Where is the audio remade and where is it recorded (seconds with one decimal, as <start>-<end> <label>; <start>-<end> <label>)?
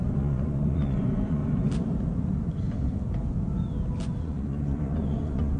0.0-1.4 remade; 1.4-4.2 recorded; 4.2-5.6 remade